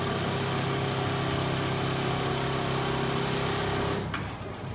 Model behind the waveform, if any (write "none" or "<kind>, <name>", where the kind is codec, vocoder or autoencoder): none